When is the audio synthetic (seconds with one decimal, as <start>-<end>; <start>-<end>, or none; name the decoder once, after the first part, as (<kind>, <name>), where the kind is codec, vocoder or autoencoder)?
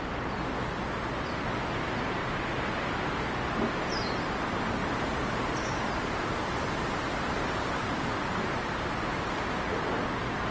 4.8-6.4 (vocoder, BigVGAN v2)